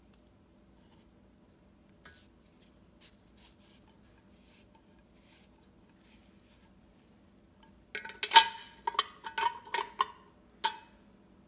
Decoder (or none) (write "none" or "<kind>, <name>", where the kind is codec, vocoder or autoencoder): none